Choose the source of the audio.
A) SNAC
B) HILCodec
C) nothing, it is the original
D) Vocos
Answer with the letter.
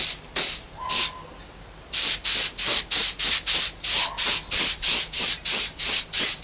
C